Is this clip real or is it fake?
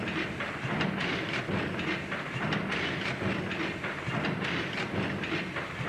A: real